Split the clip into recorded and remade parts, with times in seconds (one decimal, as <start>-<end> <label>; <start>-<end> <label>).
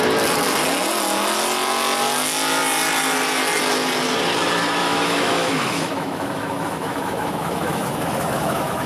0.0-4.8 recorded; 4.8-8.9 remade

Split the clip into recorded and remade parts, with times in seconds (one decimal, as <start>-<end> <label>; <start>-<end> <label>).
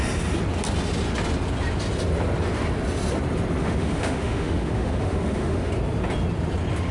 0.0-3.6 recorded; 3.6-5.7 remade; 5.7-6.9 recorded